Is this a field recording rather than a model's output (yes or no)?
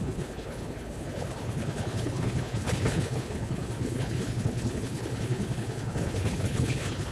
no